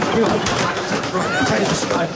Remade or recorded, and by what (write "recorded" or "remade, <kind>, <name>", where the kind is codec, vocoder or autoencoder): recorded